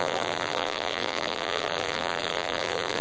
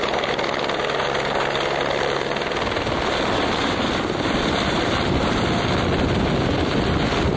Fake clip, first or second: first